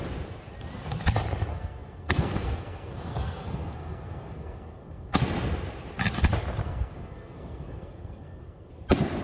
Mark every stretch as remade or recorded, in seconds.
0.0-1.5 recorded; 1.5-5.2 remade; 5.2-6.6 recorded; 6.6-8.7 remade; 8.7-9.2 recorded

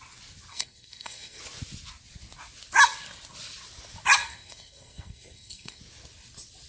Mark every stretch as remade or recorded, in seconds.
0.0-0.5 recorded; 0.5-1.4 remade; 1.4-4.2 recorded; 4.2-5.8 remade; 5.8-6.7 recorded

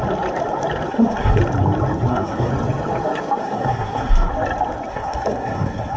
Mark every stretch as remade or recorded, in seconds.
0.0-0.9 recorded; 0.9-1.4 remade; 1.4-2.1 recorded; 2.1-2.5 remade; 2.5-3.4 recorded; 3.4-4.3 remade; 4.3-4.9 recorded; 4.9-6.0 remade

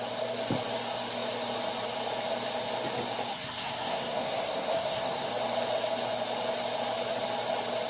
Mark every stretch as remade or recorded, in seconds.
0.0-3.3 recorded; 3.3-5.3 remade; 5.3-7.9 recorded

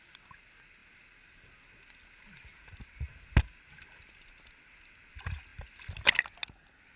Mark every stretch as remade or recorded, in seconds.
0.0-7.0 recorded

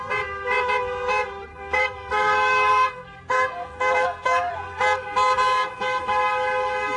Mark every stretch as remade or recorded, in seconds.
0.0-1.5 recorded; 1.5-4.5 remade; 4.5-7.0 recorded